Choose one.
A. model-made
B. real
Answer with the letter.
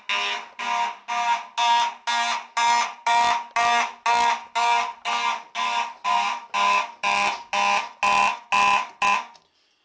B